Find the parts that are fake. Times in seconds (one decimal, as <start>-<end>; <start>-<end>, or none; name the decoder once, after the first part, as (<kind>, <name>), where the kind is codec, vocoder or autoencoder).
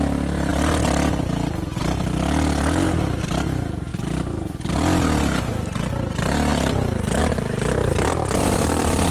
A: none